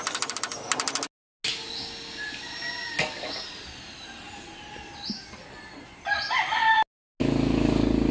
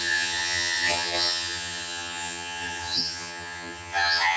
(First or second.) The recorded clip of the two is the first